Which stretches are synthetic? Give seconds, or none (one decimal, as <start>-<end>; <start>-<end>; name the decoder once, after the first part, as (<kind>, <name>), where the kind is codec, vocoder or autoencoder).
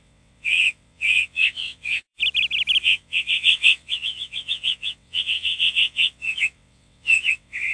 0.0-2.2 (vocoder, WaveNeXt); 2.8-7.7